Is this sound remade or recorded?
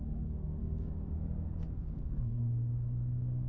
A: remade